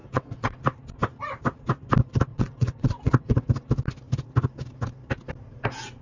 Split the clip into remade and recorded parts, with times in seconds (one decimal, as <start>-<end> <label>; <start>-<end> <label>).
0.0-0.6 remade; 0.6-2.3 recorded; 2.3-3.5 remade; 3.5-6.0 recorded